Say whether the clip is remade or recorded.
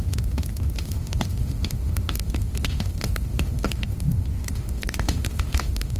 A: remade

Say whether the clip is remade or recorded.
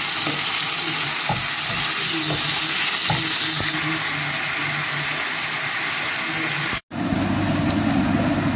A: recorded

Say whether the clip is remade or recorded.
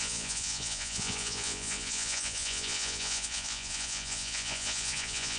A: remade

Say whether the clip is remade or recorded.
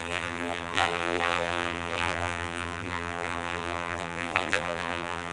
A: remade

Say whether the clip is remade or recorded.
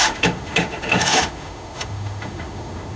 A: remade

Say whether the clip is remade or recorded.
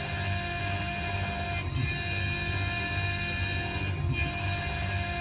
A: recorded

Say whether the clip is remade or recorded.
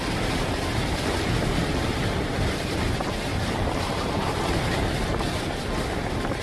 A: remade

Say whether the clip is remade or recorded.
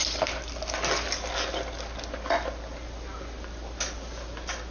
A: recorded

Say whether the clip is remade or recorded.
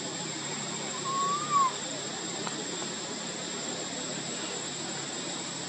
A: remade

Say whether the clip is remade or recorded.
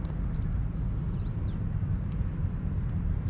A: recorded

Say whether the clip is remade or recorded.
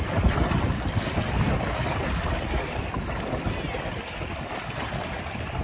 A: remade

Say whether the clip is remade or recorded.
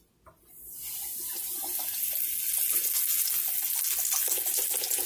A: recorded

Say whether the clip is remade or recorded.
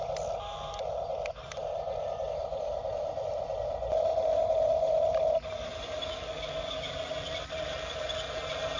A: recorded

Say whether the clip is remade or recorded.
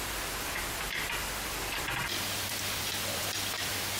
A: remade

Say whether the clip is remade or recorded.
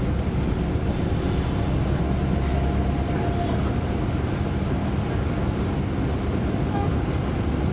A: recorded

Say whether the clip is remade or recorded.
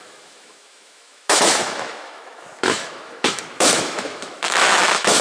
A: remade